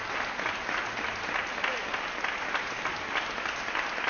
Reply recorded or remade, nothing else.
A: recorded